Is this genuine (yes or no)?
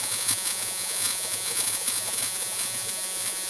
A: no